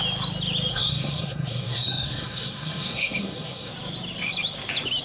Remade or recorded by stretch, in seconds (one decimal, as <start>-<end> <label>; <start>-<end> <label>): 0.0-0.7 recorded; 0.7-3.7 remade; 3.7-5.0 recorded